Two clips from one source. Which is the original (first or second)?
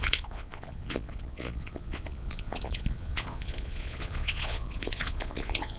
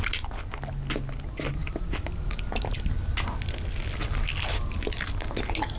second